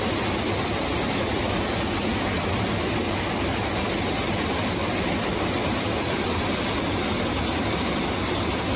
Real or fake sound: real